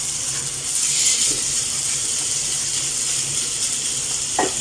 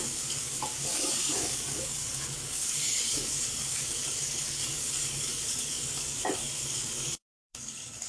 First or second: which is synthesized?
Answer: second